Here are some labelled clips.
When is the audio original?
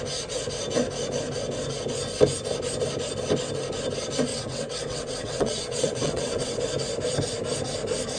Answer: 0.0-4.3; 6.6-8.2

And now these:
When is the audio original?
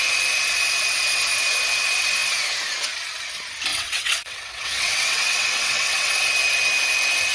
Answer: 0.0-3.7; 6.1-7.3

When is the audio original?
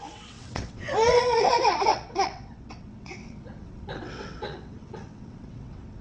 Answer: none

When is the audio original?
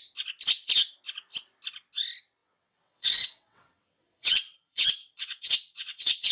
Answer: 0.0-2.4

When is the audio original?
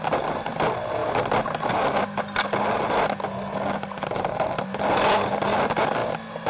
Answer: 0.0-6.5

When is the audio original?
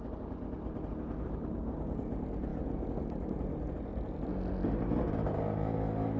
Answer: 0.0-6.2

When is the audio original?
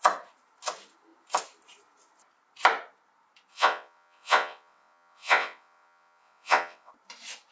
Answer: 0.0-3.5; 6.9-7.5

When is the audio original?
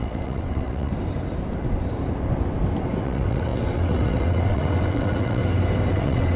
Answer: 0.9-3.0; 5.4-5.9